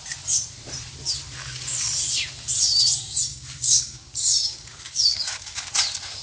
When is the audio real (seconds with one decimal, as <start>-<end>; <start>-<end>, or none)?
0.0-3.3; 5.7-6.2